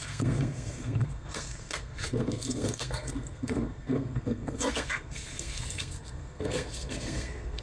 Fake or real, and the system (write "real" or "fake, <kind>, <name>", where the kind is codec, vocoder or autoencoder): fake, codec, SNAC